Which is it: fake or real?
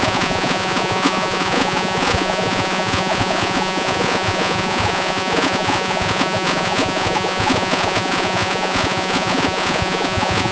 fake